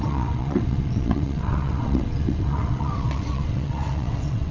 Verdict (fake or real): fake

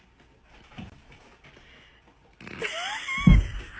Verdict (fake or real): real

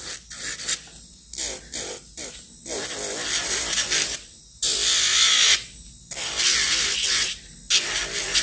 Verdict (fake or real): real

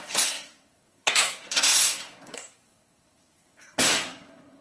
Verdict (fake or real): fake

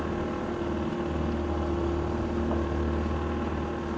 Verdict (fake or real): real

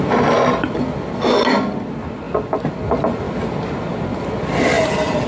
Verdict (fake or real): real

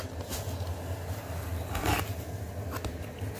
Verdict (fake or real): real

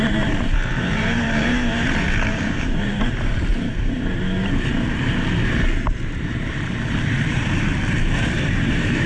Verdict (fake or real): fake